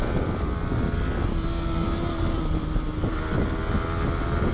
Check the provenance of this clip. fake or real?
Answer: real